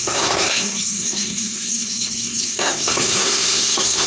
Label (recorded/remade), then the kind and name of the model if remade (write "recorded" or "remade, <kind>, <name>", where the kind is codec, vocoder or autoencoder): remade, codec, SNAC